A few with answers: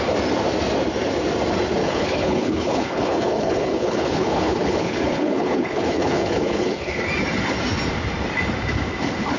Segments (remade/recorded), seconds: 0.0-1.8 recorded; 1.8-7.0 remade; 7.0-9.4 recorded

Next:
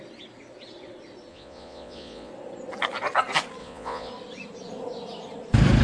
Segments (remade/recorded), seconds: 0.0-1.3 recorded; 1.3-2.3 remade; 2.3-3.6 recorded; 3.6-4.1 remade; 4.1-5.8 recorded